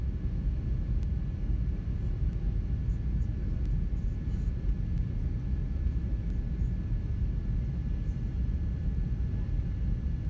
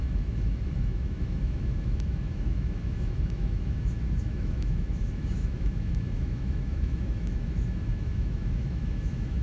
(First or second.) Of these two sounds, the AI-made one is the second